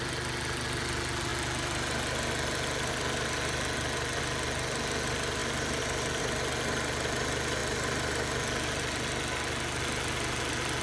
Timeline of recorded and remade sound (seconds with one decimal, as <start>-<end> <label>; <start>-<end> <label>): 0.0-10.8 recorded